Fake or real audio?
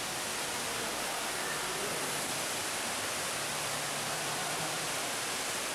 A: fake